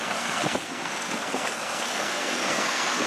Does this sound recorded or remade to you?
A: remade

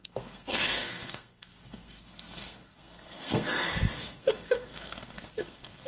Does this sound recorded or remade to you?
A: remade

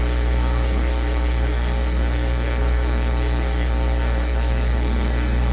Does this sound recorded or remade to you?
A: remade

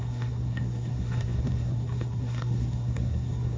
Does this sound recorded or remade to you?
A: remade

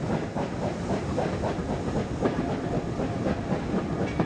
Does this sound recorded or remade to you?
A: recorded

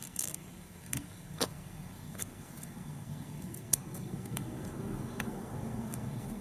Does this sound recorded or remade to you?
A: remade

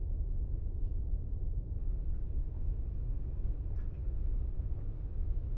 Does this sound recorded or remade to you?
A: recorded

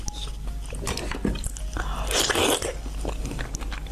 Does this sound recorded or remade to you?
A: recorded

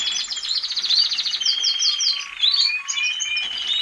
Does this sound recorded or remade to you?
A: recorded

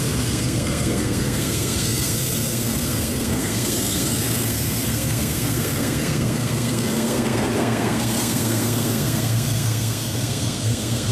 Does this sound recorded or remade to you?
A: remade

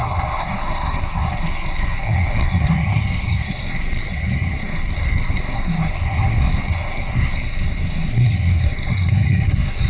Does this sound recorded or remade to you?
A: remade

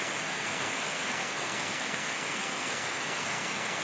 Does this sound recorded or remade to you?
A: remade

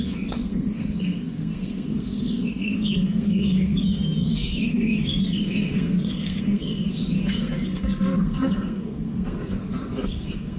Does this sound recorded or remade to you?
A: remade